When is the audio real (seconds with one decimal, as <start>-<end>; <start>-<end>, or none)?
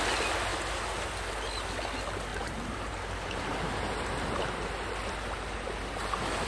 0.0-2.3